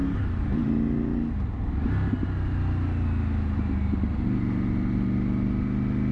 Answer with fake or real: real